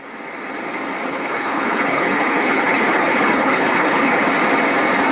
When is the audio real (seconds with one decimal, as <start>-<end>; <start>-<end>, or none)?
0.0-1.1; 4.2-5.1